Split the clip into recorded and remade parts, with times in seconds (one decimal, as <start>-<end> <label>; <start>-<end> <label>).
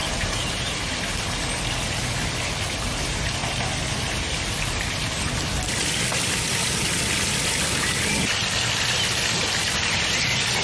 0.0-0.8 remade; 0.8-10.6 recorded